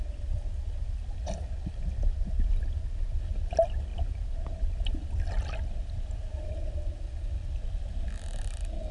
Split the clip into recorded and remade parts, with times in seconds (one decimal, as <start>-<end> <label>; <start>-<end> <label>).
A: 0.0-3.9 recorded; 3.9-7.3 remade; 7.3-8.9 recorded